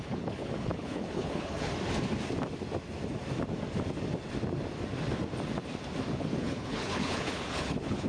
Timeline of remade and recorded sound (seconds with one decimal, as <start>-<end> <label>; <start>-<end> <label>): 0.0-1.7 remade; 1.7-6.3 recorded; 6.3-8.1 remade